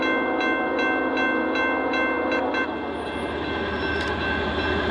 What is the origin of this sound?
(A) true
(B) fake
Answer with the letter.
A